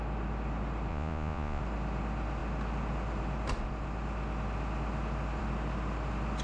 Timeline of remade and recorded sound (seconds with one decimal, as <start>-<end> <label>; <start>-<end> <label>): 0.0-0.9 recorded; 0.9-1.6 remade; 1.6-6.4 recorded